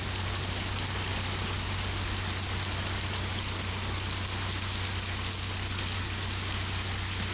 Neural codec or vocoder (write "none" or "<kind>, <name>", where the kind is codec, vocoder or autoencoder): none